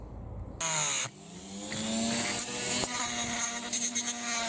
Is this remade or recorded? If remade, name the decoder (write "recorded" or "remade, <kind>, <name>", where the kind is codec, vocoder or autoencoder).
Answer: recorded